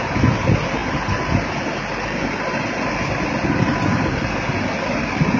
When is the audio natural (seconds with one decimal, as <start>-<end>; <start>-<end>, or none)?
0.0-5.4